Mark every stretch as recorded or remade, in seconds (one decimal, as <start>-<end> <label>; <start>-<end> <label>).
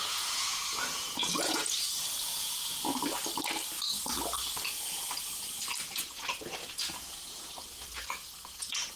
0.0-2.9 remade; 2.9-5.8 recorded; 5.8-9.0 remade